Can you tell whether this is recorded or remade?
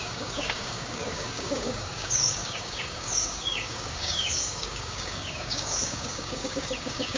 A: remade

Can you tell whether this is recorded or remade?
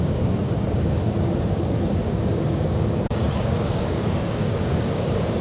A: remade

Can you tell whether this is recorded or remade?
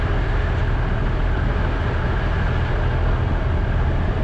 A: recorded